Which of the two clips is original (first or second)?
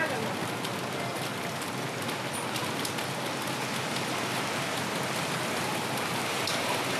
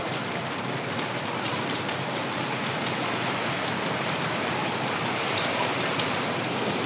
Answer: first